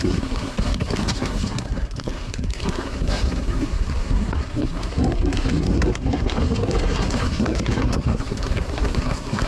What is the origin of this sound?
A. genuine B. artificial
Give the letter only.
B